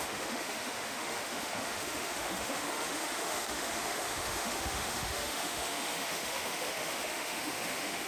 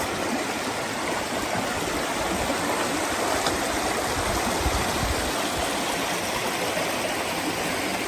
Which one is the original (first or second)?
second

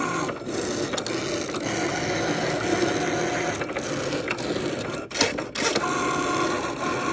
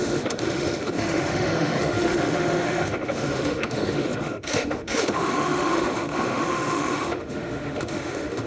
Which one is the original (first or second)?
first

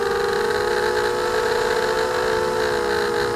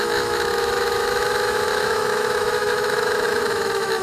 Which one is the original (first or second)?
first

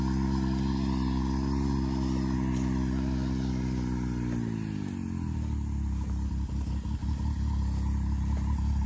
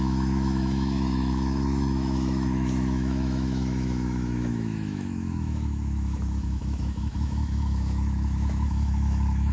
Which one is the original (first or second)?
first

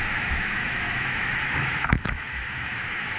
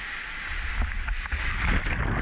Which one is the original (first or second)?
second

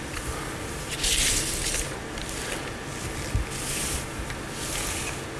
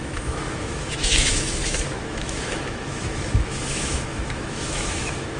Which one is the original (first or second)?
first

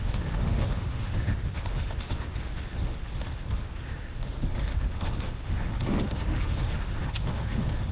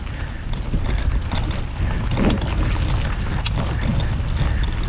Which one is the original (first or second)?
second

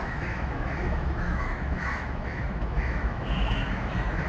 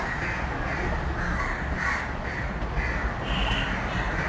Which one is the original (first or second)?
second